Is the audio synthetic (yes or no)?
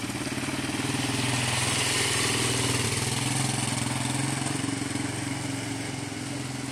no